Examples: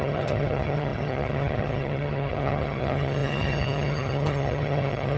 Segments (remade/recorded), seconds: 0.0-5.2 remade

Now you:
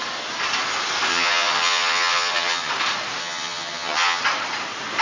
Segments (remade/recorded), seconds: 0.0-1.1 recorded; 1.1-2.7 remade; 2.7-3.2 recorded; 3.2-4.2 remade; 4.2-5.0 recorded

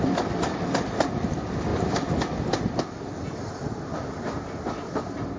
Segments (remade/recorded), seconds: 0.0-5.4 recorded

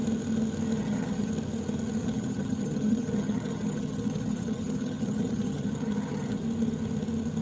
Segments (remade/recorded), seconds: 0.0-0.8 recorded; 0.8-1.3 remade; 1.3-2.0 recorded; 2.0-6.4 remade; 6.4-7.4 recorded

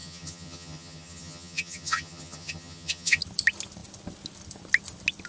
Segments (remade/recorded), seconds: 0.0-3.2 remade; 3.2-5.3 recorded

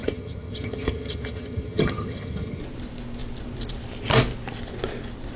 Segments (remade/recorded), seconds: 0.0-2.6 remade; 2.6-5.4 recorded